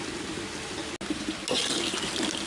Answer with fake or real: real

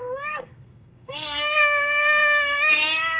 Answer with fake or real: fake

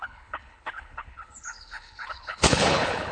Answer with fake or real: fake